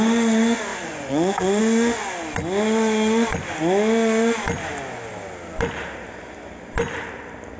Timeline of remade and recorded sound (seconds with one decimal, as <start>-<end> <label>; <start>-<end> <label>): 0.0-0.7 recorded; 0.7-1.6 remade; 1.6-7.6 recorded